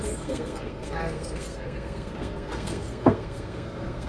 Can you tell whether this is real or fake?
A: fake